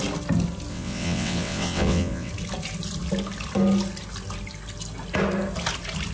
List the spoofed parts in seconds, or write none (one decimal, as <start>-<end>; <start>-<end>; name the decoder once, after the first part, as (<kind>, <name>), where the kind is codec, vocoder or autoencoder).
0.7-2.3 (vocoder, WaveNeXt)